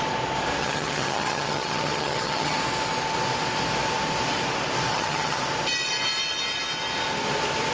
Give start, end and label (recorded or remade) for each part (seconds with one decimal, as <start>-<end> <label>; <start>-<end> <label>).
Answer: 0.0-0.6 recorded; 0.6-2.6 remade; 2.6-4.9 recorded; 4.9-5.4 remade; 5.4-7.7 recorded